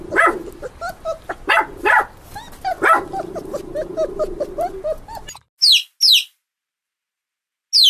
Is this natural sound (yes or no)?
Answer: yes